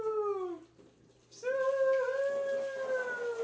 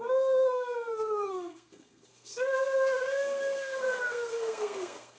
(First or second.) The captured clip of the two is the first